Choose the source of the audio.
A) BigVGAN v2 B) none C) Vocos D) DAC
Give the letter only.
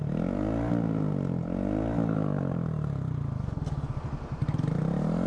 B